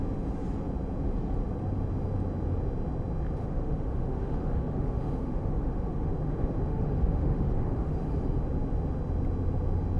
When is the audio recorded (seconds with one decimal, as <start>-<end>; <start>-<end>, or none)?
0.0-3.4; 6.1-6.7; 8.1-10.0